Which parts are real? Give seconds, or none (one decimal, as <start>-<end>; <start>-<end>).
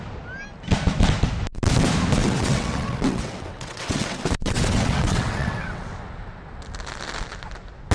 0.0-2.2; 5.9-7.9